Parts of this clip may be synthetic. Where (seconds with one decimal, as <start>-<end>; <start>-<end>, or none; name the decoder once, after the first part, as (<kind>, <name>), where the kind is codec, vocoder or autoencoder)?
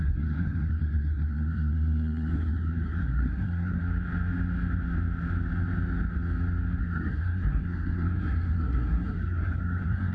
0.0-3.8 (codec, SNAC); 6.8-10.1